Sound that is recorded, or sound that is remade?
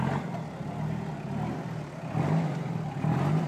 recorded